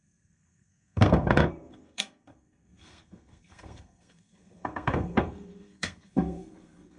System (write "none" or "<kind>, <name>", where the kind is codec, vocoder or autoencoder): codec, SNAC